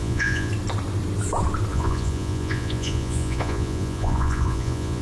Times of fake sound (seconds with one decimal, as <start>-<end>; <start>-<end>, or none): 0.0-0.5; 1.7-5.0